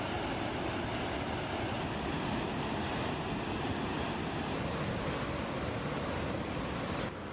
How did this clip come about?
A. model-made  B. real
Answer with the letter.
B